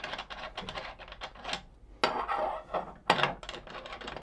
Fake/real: real